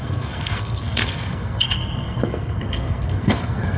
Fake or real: fake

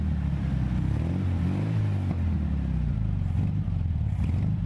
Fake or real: real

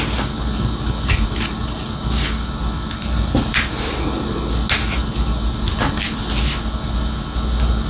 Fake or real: real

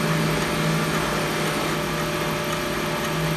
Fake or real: real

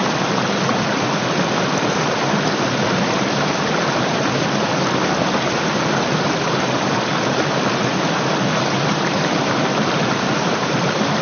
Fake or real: fake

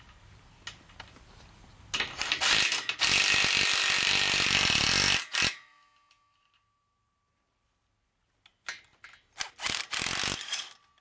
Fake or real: real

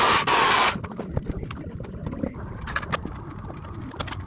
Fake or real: real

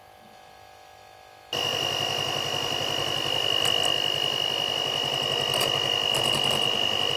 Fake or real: real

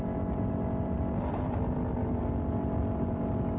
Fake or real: real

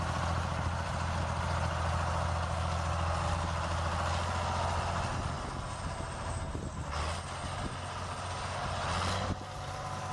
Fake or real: real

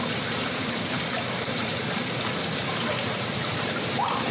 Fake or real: fake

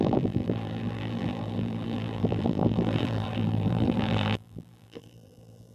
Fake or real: fake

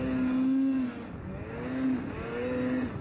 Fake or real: real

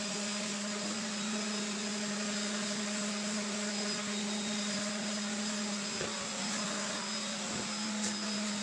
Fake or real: real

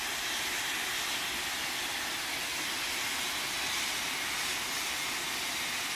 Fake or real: fake